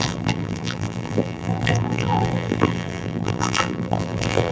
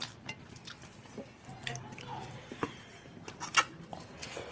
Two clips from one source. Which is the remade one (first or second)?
first